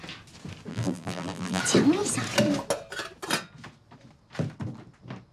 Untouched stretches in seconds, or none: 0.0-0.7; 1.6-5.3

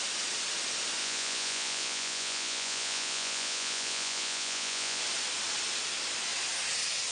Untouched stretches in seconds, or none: 0.0-1.0; 5.0-7.1